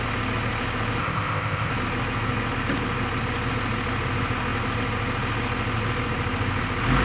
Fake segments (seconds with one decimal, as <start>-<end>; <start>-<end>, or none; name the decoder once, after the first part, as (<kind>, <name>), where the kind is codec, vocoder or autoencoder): 1.0-1.7 (codec, ZipCodec)